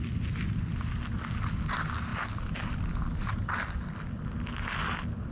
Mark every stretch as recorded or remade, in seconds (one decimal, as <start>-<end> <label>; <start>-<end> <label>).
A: 0.0-5.3 recorded